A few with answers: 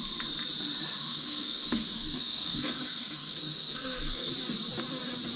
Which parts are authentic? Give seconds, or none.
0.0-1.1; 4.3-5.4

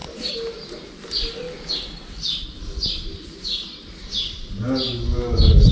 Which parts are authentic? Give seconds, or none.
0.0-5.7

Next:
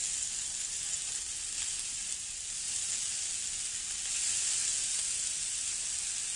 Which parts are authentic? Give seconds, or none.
0.0-6.4

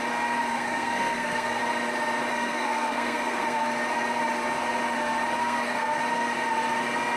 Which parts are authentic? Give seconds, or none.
0.0-0.5; 1.6-2.3; 3.6-5.4; 6.0-7.2